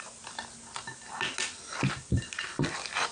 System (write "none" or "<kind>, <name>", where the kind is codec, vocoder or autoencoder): none